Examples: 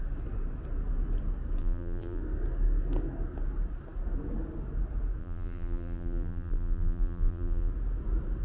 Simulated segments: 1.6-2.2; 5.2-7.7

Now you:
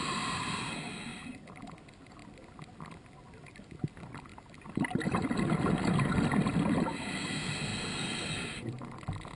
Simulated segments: none

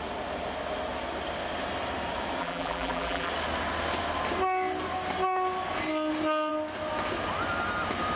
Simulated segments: 2.4-3.3